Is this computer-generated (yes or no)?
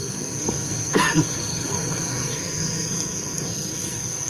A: yes